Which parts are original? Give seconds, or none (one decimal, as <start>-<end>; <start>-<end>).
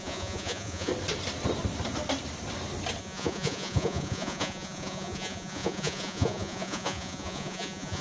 0.9-3.0